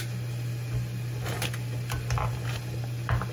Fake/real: real